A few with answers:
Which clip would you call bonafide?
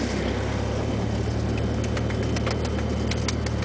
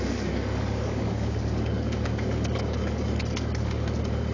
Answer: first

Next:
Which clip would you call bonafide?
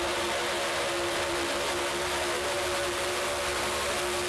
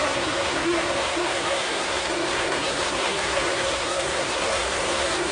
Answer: first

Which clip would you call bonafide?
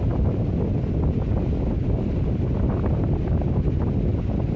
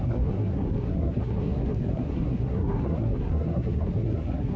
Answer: first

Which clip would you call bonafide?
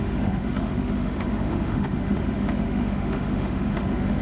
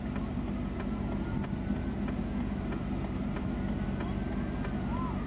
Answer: second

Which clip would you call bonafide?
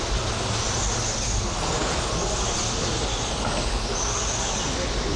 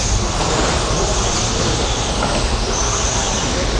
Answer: first